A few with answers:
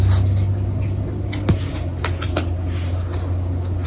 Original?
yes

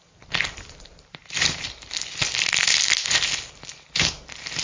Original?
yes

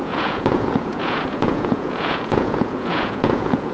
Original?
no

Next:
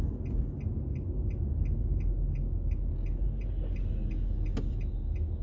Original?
yes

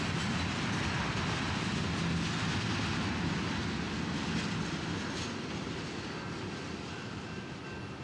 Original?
yes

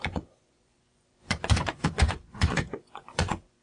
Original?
no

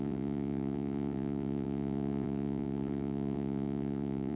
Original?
no